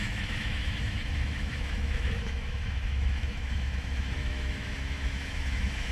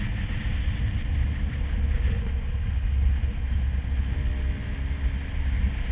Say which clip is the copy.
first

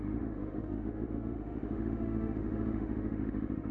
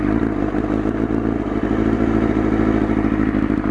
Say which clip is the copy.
first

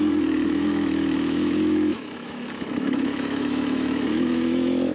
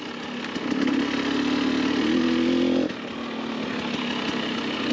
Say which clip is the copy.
first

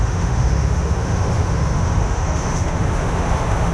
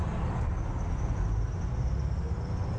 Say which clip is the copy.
first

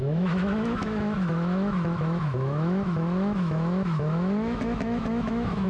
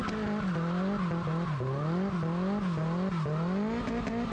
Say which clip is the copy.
first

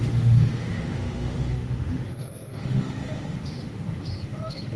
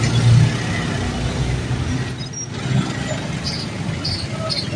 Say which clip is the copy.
first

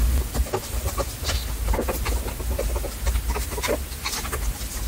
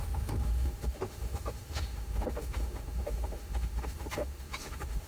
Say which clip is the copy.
second